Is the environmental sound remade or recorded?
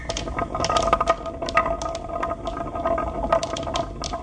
recorded